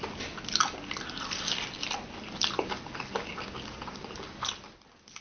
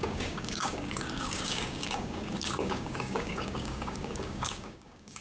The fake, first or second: second